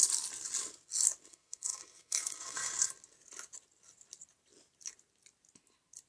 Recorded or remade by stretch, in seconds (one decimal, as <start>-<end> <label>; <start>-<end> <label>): 0.0-1.3 recorded; 1.3-2.9 remade; 2.9-6.1 recorded